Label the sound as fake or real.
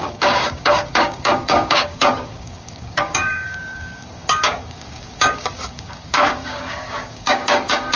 fake